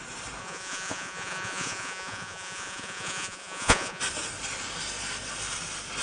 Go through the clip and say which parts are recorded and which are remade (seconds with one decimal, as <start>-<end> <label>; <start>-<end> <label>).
0.0-0.4 recorded; 0.4-4.0 remade; 4.0-6.0 recorded

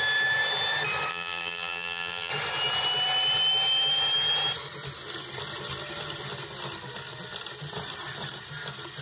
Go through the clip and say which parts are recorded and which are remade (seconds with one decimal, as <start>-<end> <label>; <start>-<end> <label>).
0.0-1.1 recorded; 1.1-2.3 remade; 2.3-9.0 recorded

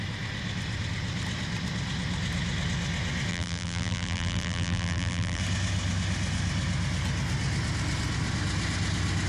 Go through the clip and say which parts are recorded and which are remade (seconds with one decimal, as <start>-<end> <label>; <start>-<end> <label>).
0.0-3.3 recorded; 3.3-5.4 remade; 5.4-9.3 recorded

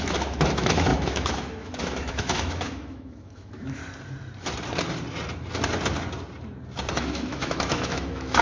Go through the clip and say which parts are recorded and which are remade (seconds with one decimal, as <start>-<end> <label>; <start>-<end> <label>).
0.0-3.8 remade; 3.8-6.9 recorded; 6.9-8.4 remade

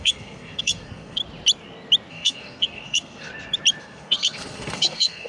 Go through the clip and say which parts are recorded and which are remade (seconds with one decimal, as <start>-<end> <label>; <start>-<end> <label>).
0.0-1.2 remade; 1.2-2.1 recorded; 2.1-3.3 remade; 3.3-3.8 recorded; 3.8-5.3 remade

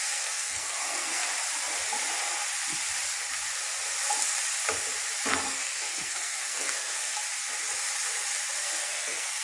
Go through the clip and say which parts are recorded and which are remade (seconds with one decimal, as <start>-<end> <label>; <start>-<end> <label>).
0.0-1.2 remade; 1.2-5.3 recorded; 5.3-7.2 remade; 7.2-8.6 recorded; 8.6-9.4 remade